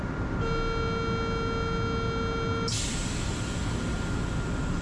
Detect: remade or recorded recorded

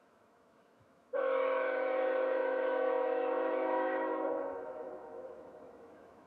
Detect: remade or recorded remade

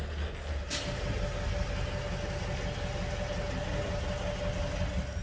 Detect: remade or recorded recorded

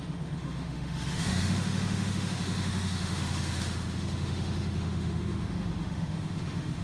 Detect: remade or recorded remade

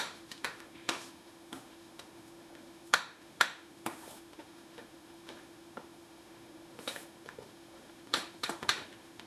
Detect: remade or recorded remade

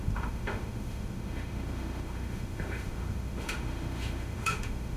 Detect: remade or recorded remade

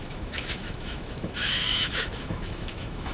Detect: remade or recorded remade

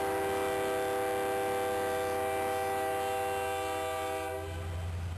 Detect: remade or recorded recorded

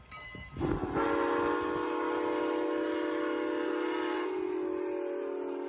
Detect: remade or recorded recorded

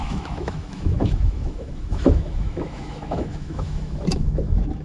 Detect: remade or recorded remade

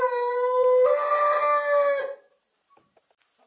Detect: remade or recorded recorded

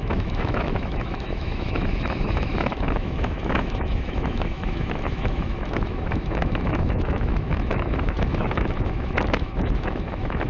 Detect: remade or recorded remade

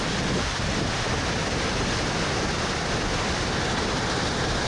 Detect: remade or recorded recorded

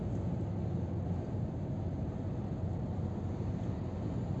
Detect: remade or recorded recorded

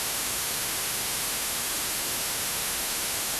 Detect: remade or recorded remade